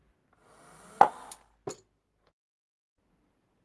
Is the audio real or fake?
real